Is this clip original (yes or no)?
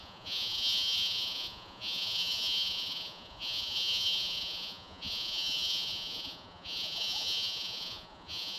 no